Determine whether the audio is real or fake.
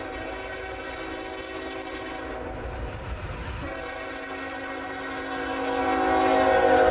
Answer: real